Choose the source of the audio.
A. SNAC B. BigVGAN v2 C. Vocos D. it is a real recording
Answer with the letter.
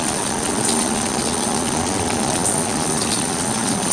C